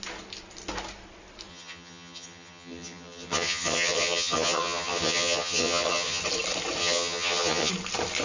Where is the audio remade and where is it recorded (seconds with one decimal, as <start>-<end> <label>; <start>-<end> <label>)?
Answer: 0.0-1.5 recorded; 1.5-6.2 remade; 6.2-6.8 recorded; 6.8-7.7 remade; 7.7-8.2 recorded